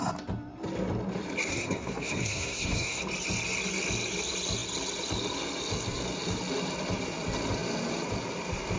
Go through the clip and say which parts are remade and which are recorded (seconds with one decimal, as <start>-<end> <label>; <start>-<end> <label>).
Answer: 0.0-1.5 recorded; 1.5-3.0 remade; 3.0-8.8 recorded